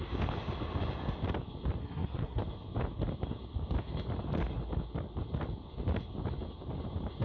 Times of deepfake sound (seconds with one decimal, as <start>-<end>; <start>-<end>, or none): 1.8-2.4

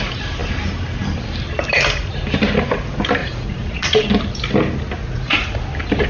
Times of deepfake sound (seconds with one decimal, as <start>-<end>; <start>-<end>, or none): 3.2-4.1; 5.0-5.6